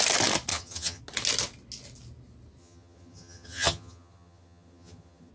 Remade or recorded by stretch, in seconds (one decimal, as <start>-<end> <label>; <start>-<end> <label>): 0.0-0.5 recorded; 0.5-1.0 remade; 1.0-2.6 recorded; 2.6-5.3 remade